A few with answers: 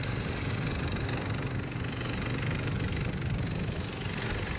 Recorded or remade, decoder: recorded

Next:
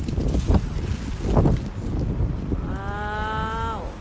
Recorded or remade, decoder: recorded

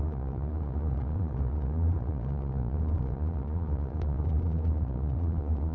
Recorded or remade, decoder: remade, vocoder, Vocos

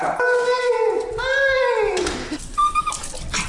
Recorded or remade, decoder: recorded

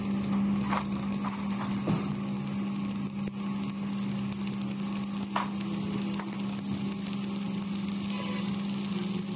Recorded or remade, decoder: recorded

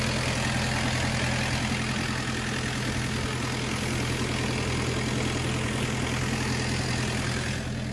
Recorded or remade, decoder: recorded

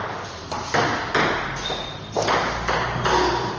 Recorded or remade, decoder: recorded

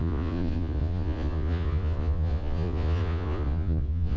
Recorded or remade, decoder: remade, vocoder, Vocos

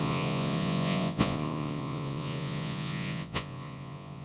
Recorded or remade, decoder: remade, vocoder, Vocos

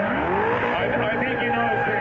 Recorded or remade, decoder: recorded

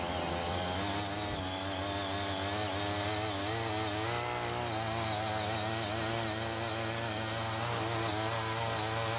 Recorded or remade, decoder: recorded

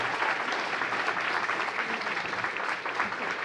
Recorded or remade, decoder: recorded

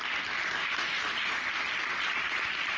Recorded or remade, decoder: recorded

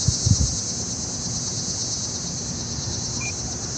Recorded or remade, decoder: recorded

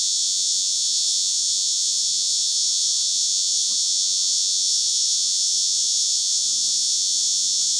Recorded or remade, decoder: remade, vocoder, Vocos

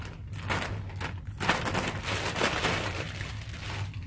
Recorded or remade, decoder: recorded